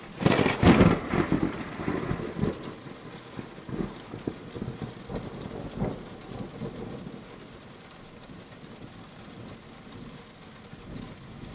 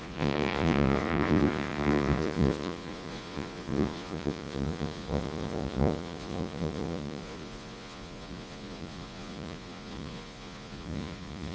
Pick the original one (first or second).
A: first